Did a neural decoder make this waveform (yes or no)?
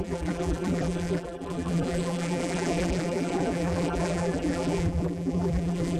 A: yes